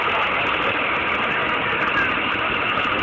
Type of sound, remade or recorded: recorded